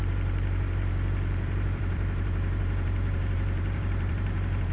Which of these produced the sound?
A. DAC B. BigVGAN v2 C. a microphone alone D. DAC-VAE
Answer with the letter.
B